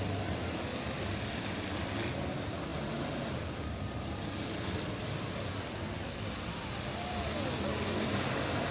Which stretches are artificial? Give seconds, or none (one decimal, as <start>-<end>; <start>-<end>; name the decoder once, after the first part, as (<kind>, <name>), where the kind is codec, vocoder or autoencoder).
none